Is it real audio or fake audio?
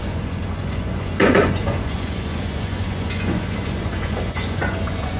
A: fake